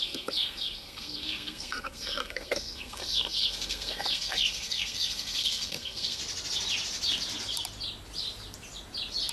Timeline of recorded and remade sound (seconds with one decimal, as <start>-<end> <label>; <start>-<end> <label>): 0.0-6.2 remade; 6.2-9.3 recorded